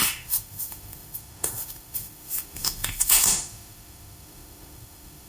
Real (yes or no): no